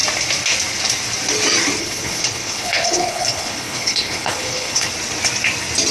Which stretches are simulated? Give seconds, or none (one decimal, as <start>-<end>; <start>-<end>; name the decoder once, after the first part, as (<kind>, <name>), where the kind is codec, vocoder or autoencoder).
1.8-4.9 (codec, HILCodec)